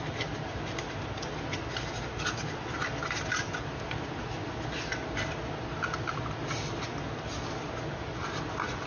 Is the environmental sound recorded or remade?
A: recorded